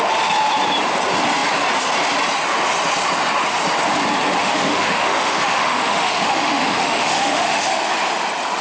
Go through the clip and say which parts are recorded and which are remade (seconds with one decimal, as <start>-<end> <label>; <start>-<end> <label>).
0.0-4.4 recorded; 4.4-7.7 remade; 7.7-8.6 recorded